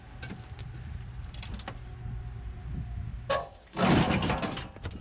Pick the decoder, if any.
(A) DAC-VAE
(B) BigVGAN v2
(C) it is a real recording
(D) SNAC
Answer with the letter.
C